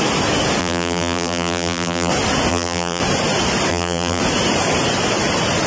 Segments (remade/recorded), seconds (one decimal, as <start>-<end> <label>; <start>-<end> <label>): 0.0-0.6 recorded; 0.6-2.1 remade; 2.1-2.5 recorded; 2.5-3.0 remade; 3.0-3.7 recorded; 3.7-4.2 remade; 4.2-5.7 recorded